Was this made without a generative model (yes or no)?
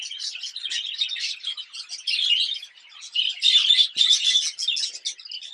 yes